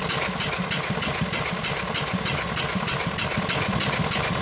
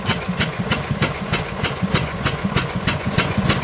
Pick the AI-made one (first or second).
second